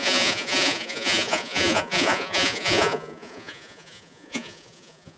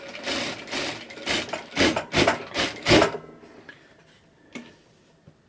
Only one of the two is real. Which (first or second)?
second